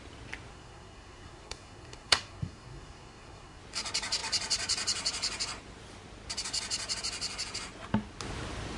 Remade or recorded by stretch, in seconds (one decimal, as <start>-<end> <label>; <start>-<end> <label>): 0.0-0.5 recorded; 0.5-3.6 remade; 3.6-8.8 recorded